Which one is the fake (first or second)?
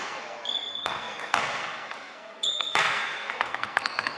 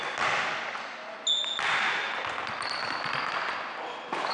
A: first